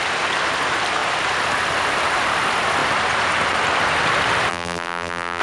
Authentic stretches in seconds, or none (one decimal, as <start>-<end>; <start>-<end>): 0.0-4.5